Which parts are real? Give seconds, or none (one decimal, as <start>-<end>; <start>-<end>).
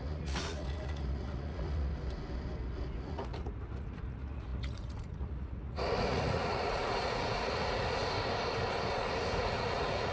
1.9-3.0; 8.0-8.9